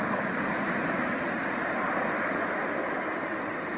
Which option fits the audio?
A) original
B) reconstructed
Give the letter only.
A